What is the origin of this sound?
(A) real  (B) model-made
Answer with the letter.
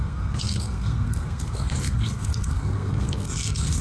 B